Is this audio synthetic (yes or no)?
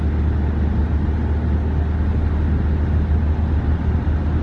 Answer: no